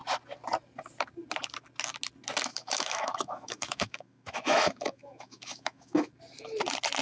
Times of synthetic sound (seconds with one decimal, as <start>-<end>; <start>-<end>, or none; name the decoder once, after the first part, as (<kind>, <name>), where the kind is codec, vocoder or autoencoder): 2.5-6.1 (autoencoder, DAC-VAE)